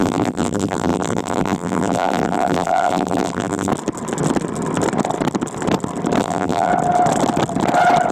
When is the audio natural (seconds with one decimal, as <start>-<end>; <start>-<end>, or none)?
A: 3.7-6.2; 6.7-8.1